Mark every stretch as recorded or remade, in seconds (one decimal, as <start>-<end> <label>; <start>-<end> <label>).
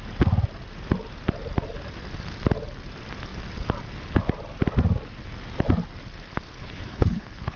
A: 0.0-6.6 recorded; 6.6-7.6 remade